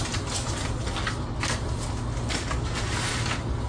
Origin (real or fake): real